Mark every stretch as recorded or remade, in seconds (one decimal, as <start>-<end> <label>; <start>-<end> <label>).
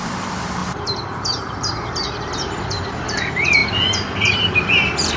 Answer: 0.0-5.2 remade